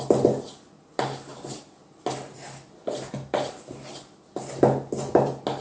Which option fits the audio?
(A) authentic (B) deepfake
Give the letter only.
A